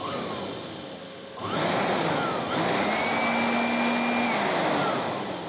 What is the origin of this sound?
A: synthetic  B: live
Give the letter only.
B